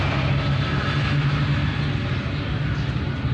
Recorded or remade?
recorded